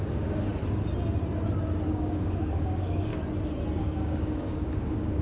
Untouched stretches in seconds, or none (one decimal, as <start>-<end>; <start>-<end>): 0.5-1.9; 3.1-3.8